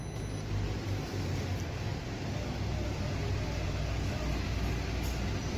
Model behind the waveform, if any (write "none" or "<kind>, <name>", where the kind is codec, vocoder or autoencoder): none